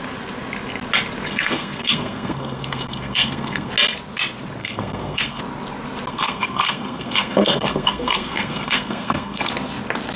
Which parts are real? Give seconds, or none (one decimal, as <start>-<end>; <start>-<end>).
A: 0.0-1.3; 3.7-4.6; 5.4-6.1; 9.5-10.2